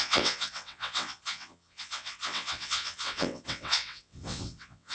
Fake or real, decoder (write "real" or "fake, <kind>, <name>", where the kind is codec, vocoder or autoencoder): fake, vocoder, WaveNeXt